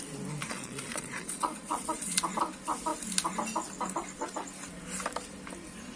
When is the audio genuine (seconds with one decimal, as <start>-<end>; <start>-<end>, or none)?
0.0-0.4; 2.2-6.0